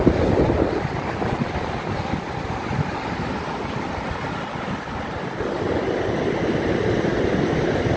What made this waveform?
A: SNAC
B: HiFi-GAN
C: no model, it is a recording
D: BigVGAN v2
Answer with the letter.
C